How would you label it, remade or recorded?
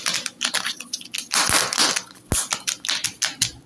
recorded